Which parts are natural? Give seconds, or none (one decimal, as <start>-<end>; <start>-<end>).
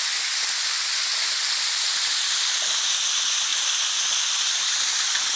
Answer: 0.0-3.5